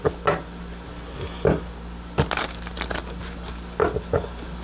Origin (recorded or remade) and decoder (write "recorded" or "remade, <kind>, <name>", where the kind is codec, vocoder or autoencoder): recorded